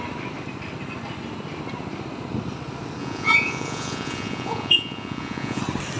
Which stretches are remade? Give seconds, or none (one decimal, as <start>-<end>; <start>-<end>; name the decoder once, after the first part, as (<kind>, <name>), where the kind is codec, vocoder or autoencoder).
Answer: 3.0-5.6 (vocoder, Vocos)